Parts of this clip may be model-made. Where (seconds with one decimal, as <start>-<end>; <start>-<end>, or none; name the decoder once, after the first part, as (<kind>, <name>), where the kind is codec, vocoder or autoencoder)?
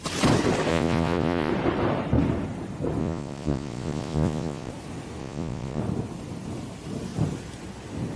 0.7-1.5 (vocoder, Vocos); 3.0-4.7; 5.2-5.8